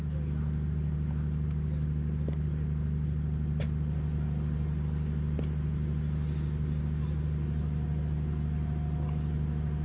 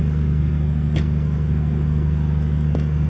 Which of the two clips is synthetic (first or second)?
second